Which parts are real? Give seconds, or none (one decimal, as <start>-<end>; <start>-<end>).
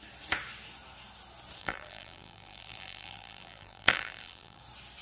0.0-1.6; 4.6-5.0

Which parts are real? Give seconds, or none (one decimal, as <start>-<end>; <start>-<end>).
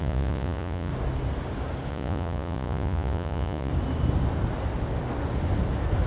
0.9-1.9; 3.7-6.1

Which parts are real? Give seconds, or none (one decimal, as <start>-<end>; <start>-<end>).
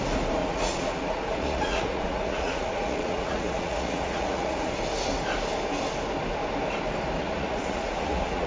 0.0-0.4; 4.7-7.2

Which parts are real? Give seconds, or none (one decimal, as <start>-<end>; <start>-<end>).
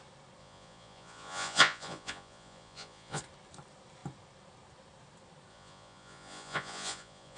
0.0-0.4; 3.2-5.5